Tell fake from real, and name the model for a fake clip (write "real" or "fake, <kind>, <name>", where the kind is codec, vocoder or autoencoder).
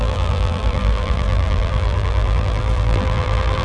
fake, vocoder, BigVGAN v2